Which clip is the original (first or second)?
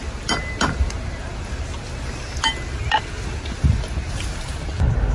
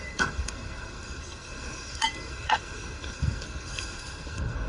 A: first